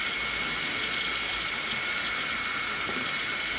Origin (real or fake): real